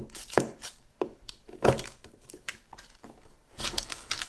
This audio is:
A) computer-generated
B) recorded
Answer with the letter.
A